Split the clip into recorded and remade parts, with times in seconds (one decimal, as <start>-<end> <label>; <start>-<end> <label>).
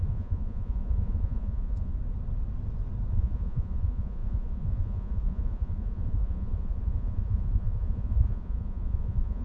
0.0-1.9 remade; 1.9-3.1 recorded; 3.1-9.4 remade